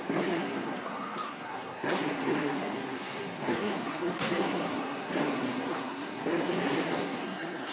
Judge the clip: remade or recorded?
remade